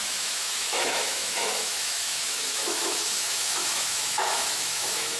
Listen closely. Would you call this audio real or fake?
fake